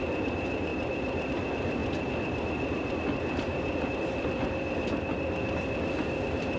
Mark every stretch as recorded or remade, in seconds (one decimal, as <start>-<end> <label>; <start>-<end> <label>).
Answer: 0.0-0.7 remade; 0.7-1.3 recorded; 1.3-1.8 remade; 1.8-4.0 recorded; 4.0-6.6 remade